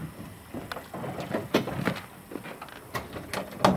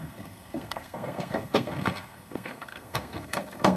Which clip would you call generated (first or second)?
second